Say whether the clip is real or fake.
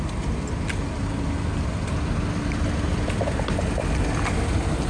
real